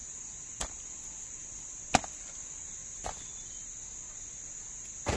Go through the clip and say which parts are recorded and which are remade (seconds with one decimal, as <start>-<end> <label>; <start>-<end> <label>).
0.0-5.2 recorded